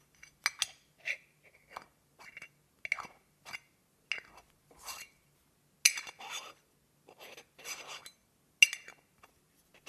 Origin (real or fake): real